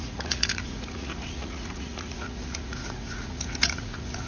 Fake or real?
fake